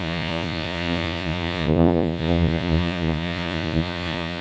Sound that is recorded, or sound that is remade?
remade